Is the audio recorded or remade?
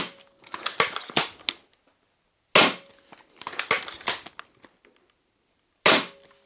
recorded